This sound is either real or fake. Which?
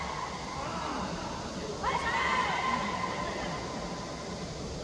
real